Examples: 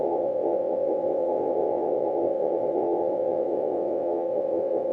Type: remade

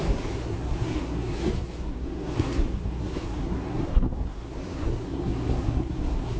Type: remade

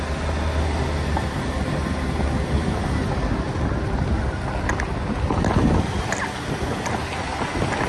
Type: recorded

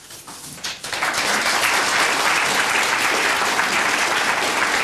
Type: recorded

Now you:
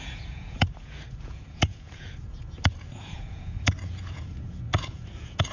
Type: remade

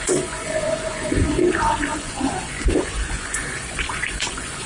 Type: remade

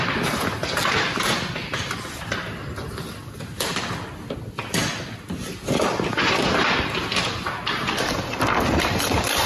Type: recorded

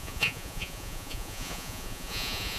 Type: remade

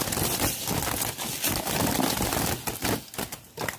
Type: recorded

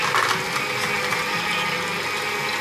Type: recorded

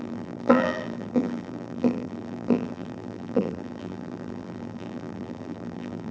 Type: remade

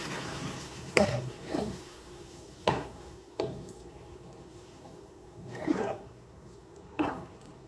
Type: remade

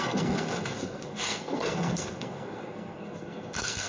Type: remade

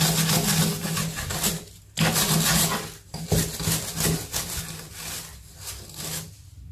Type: recorded